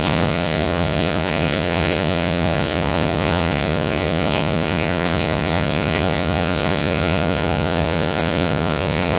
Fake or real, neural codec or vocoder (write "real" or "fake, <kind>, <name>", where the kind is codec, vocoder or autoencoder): fake, vocoder, Vocos